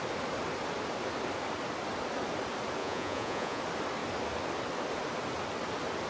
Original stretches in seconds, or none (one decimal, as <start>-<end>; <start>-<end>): 0.0-2.8; 3.6-6.1